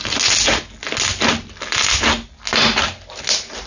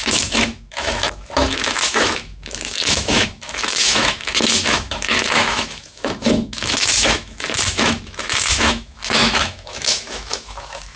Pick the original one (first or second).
first